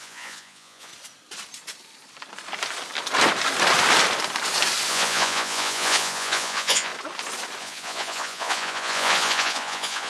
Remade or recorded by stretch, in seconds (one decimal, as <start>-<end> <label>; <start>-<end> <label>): 0.0-0.9 remade; 0.9-4.9 recorded; 4.9-6.9 remade; 6.9-7.6 recorded; 7.6-10.1 remade